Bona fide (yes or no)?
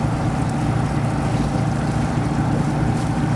yes